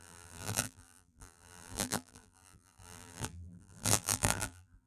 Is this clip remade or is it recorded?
remade